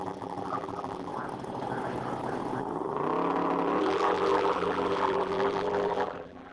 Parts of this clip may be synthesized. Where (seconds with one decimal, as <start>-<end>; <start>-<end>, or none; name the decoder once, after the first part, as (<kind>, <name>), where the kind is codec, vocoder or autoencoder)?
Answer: 0.0-1.1 (vocoder, BigVGAN v2); 3.8-6.5